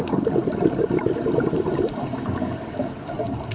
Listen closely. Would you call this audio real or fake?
real